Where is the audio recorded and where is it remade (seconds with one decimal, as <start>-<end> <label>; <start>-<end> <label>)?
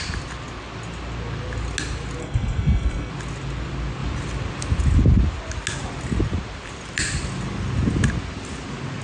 0.0-2.2 recorded; 2.2-3.1 remade; 3.1-9.0 recorded